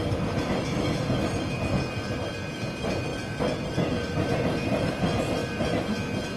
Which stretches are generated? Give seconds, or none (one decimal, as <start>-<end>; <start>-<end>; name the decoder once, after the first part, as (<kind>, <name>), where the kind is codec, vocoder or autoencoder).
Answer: none